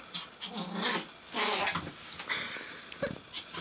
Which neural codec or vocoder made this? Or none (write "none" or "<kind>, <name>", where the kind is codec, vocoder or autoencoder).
none